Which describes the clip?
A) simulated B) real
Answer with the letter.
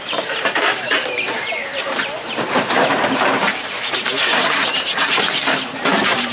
A